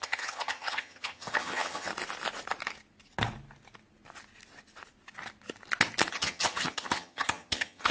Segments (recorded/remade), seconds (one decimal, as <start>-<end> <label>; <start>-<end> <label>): 0.0-1.9 remade; 1.9-6.1 recorded; 6.1-7.9 remade